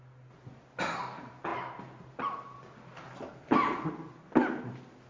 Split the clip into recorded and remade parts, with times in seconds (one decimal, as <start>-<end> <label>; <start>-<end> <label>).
0.0-5.1 recorded

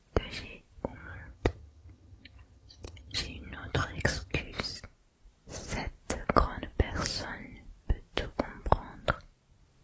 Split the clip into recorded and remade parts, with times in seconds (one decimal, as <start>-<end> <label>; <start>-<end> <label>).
0.0-0.9 recorded; 0.9-4.4 remade; 4.4-9.8 recorded

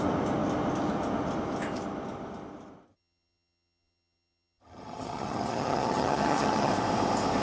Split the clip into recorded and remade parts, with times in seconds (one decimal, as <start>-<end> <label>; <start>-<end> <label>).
0.0-2.9 recorded; 2.9-6.7 remade; 6.7-7.4 recorded

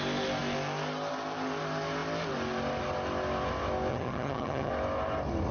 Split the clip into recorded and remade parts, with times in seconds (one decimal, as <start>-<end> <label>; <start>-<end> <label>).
0.0-3.9 recorded; 3.9-4.7 remade; 4.7-5.5 recorded

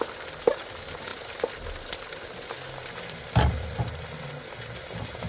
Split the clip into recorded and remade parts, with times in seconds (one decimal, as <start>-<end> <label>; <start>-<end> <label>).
0.0-5.3 recorded

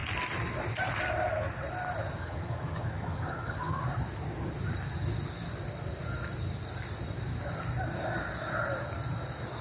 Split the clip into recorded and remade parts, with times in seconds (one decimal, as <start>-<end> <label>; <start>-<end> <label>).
0.0-2.2 recorded; 2.2-3.8 remade; 3.8-9.6 recorded